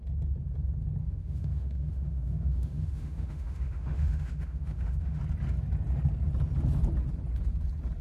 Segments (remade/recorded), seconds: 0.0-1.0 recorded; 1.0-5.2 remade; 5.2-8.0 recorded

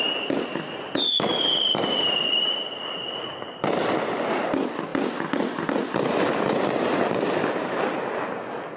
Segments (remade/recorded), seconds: 0.0-8.8 recorded

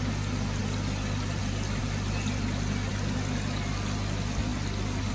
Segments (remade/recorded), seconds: 0.0-5.1 recorded

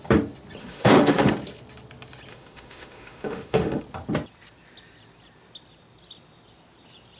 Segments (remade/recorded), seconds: 0.0-0.6 recorded; 0.6-1.3 remade; 1.3-2.3 recorded; 2.3-3.8 remade; 3.8-7.2 recorded

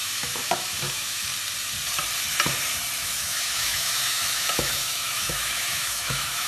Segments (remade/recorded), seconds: 0.0-1.3 remade; 1.3-3.0 recorded; 3.0-6.5 remade

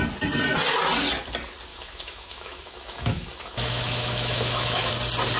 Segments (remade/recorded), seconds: 0.0-1.7 recorded; 1.7-4.9 remade; 4.9-5.4 recorded

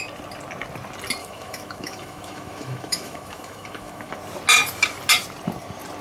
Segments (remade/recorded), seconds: 0.0-1.2 recorded; 1.2-4.1 remade; 4.1-6.0 recorded